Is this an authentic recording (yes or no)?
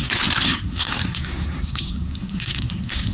no